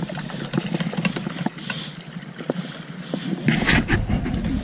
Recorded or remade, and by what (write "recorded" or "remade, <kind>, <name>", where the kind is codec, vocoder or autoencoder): recorded